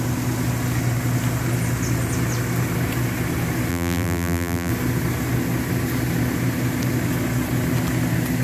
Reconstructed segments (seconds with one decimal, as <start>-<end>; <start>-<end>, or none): 3.7-4.7